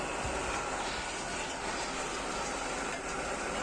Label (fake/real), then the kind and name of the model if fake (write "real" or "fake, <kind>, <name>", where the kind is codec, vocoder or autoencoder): real